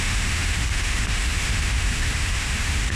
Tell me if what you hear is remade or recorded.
remade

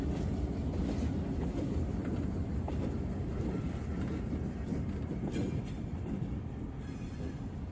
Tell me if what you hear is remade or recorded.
remade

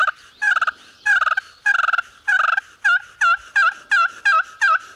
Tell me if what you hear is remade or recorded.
recorded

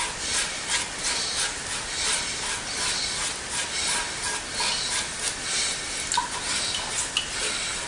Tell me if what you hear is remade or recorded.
recorded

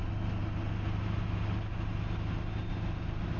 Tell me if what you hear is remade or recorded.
recorded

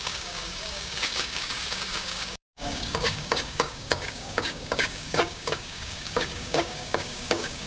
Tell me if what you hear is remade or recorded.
remade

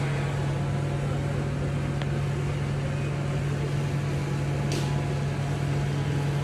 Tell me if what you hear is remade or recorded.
recorded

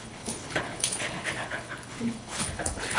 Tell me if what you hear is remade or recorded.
remade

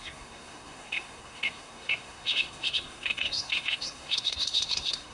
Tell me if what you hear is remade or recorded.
remade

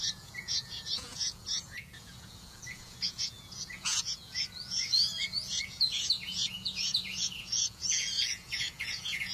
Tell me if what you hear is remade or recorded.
remade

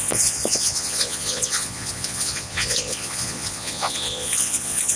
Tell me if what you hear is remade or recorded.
remade